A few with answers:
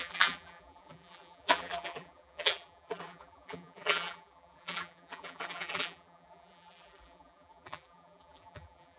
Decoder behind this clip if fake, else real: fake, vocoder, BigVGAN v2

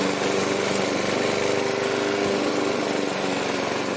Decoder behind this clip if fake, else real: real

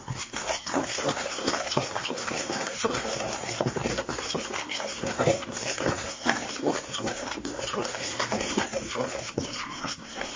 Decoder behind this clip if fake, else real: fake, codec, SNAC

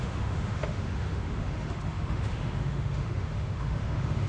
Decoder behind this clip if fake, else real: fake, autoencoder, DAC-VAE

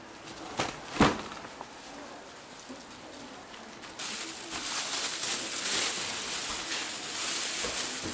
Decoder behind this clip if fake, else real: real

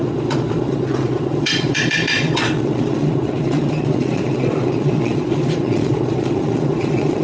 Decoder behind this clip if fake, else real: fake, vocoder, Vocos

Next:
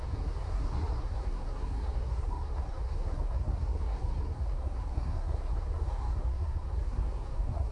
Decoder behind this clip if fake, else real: fake, codec, SNAC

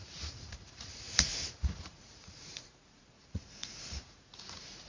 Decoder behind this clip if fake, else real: fake, vocoder, Vocos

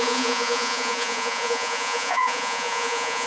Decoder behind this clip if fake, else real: fake, vocoder, Vocos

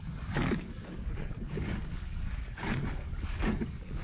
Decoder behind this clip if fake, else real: fake, codec, DAC